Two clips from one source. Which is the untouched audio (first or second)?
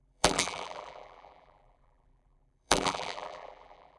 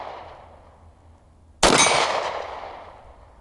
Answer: second